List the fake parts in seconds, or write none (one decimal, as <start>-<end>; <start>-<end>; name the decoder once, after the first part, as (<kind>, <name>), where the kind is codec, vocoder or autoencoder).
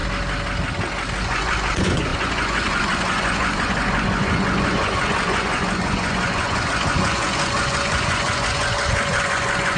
1.2-9.8 (vocoder, Vocos)